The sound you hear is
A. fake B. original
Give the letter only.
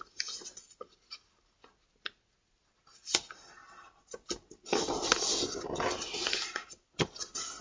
B